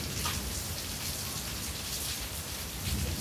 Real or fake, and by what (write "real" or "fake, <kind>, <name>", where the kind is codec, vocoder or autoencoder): fake, vocoder, BigVGAN v2